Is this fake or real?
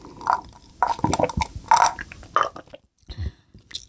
real